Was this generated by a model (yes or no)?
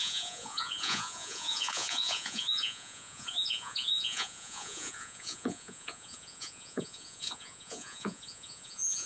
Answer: yes